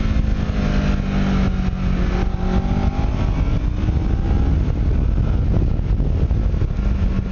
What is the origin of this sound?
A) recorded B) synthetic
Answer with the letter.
A